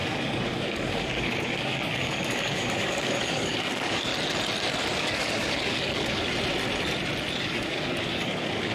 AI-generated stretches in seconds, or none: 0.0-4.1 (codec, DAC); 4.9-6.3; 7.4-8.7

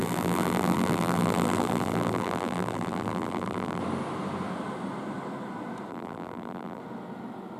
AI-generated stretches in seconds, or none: 0.0-3.8 (vocoder, BigVGAN v2); 5.9-6.8

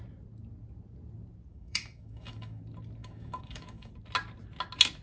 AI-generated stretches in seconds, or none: 1.5-2.6 (autoencoder, DAC-VAE); 3.0-3.9

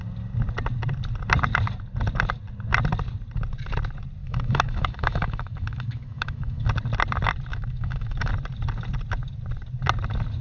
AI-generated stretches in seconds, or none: 4.2-6.7 (autoencoder, DAC-VAE); 7.5-8.3